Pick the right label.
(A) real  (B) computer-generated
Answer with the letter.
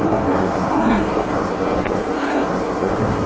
B